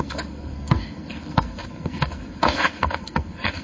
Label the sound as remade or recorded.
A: remade